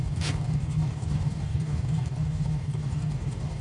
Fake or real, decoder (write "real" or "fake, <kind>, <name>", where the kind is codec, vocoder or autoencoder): fake, codec, DAC